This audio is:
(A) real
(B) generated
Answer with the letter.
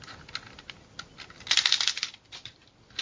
A